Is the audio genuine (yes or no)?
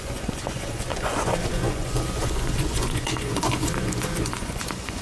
no